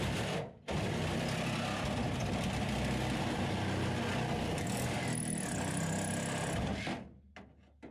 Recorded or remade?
recorded